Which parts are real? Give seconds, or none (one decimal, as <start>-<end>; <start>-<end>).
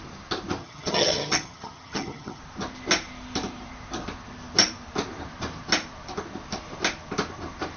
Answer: 0.0-0.6; 2.4-7.8